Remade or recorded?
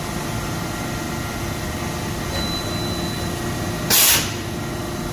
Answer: recorded